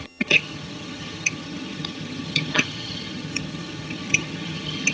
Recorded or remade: remade